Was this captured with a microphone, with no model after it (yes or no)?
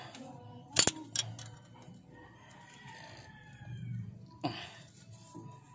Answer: yes